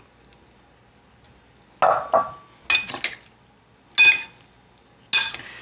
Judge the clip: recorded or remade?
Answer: recorded